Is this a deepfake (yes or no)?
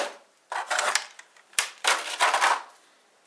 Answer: no